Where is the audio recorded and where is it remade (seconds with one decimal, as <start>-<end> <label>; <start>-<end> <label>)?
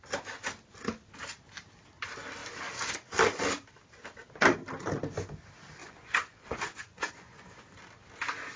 0.0-5.8 recorded; 5.8-7.6 remade; 7.6-8.6 recorded